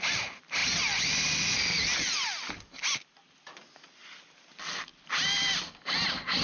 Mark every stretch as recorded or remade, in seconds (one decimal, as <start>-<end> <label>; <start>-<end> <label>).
0.0-6.4 recorded